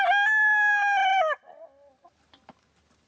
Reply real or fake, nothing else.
real